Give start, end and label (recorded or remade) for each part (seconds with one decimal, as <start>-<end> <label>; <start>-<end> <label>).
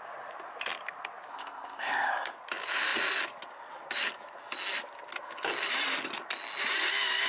0.0-1.3 recorded; 1.3-2.1 remade; 2.1-7.3 recorded